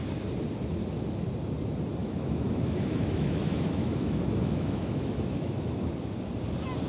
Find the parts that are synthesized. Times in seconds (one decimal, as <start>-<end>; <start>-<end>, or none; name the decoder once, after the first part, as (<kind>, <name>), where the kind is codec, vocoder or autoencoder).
2.0-5.9 (autoencoder, DAC-VAE)